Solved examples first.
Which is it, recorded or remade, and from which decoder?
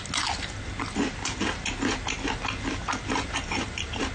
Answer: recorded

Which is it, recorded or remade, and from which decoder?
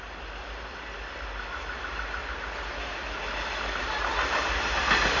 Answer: recorded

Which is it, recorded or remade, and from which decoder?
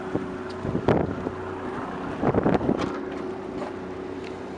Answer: recorded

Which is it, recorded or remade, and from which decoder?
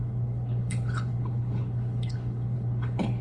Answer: remade, codec, HILCodec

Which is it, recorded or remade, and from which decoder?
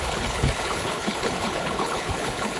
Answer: remade, codec, HILCodec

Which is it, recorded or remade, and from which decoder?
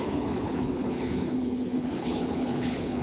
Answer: remade, codec, HILCodec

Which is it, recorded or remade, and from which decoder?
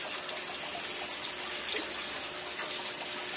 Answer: recorded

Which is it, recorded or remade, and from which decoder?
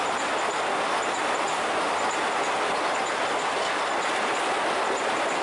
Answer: recorded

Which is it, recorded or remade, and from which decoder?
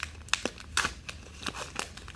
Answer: recorded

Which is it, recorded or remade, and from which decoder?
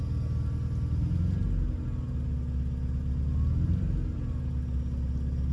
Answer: recorded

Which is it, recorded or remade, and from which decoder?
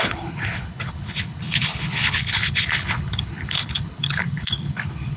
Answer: remade, codec, HILCodec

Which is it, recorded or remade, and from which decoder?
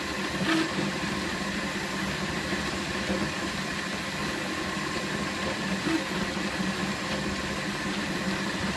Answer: recorded